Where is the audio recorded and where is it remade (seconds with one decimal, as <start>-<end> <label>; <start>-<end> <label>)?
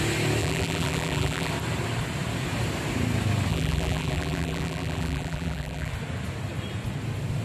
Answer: 0.0-0.4 recorded; 0.4-1.5 remade; 1.5-3.5 recorded; 3.5-5.9 remade; 5.9-7.4 recorded